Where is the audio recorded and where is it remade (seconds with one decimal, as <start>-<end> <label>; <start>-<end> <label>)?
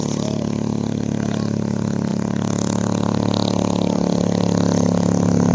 0.0-5.5 recorded